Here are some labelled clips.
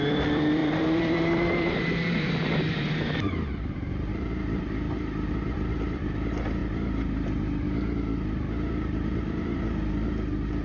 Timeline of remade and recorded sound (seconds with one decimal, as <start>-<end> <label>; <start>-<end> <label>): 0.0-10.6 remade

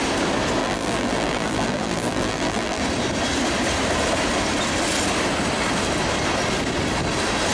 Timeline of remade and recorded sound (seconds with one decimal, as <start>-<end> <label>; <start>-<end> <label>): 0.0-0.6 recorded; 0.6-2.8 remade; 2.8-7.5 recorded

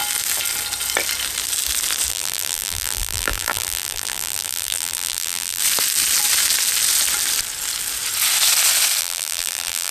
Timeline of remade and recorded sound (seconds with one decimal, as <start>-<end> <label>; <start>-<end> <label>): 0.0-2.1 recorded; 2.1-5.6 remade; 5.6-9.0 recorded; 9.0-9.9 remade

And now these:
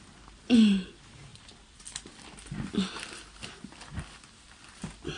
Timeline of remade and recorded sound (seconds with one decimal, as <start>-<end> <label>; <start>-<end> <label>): 0.0-1.3 recorded; 1.3-4.4 remade; 4.4-5.2 recorded

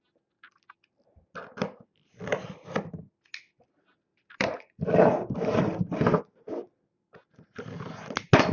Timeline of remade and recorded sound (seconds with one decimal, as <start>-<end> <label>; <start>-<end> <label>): 0.0-4.1 recorded; 4.1-5.6 remade; 5.6-8.5 recorded